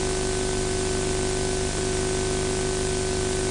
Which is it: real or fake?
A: real